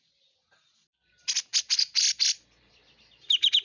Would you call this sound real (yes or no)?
yes